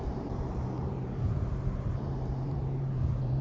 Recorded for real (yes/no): no